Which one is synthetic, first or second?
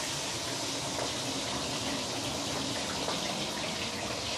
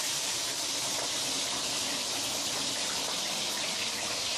second